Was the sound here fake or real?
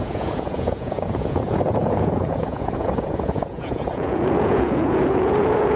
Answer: fake